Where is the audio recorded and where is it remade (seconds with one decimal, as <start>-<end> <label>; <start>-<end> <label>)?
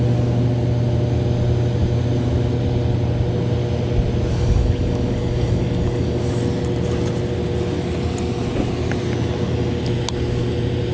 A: 0.0-4.3 recorded; 4.3-6.3 remade; 6.3-10.9 recorded